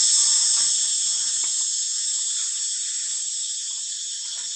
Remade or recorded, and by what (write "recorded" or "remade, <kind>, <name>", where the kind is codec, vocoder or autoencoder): recorded